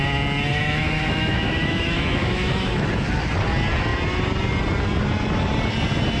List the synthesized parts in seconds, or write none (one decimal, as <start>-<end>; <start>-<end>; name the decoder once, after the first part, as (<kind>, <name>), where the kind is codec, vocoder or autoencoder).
0.5-2.9 (autoencoder, DAC-VAE)